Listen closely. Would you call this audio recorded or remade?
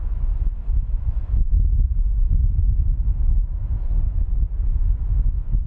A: recorded